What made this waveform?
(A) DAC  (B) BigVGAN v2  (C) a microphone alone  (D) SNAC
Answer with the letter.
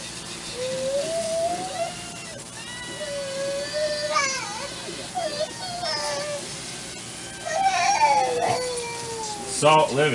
C